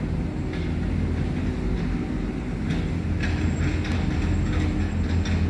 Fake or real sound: real